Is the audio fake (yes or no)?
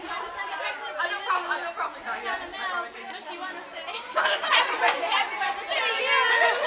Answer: no